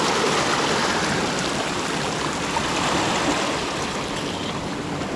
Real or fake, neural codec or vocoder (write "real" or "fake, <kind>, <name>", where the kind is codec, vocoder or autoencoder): real